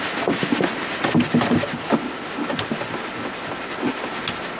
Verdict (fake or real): real